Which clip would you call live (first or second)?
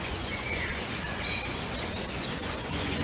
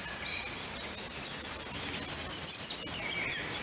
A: second